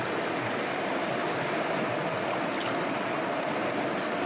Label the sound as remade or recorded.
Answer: recorded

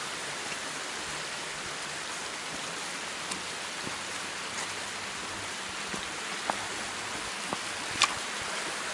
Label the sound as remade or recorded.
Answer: recorded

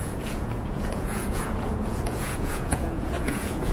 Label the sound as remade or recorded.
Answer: remade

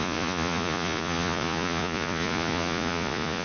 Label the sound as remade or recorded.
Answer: remade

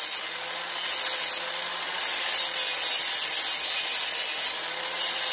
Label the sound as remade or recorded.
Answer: recorded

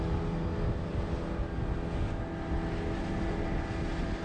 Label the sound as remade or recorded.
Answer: recorded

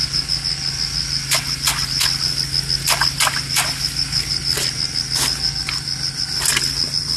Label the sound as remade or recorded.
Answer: recorded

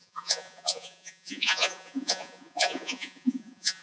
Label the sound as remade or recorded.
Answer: remade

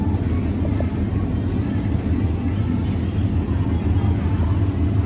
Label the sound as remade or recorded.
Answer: recorded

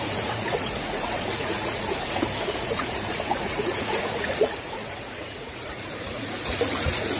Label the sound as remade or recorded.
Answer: remade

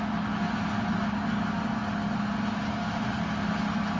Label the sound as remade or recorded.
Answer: recorded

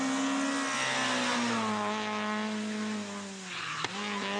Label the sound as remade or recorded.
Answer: recorded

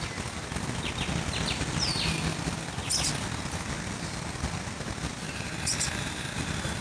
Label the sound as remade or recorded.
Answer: recorded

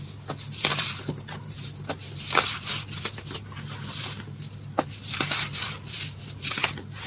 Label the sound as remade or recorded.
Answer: recorded